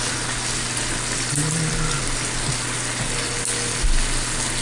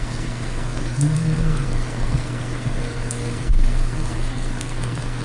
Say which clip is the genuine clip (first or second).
first